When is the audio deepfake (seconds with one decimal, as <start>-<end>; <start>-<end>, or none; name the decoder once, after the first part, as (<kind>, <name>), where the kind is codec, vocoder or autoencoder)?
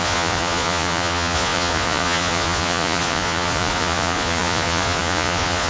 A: 0.0-5.7 (vocoder, Vocos)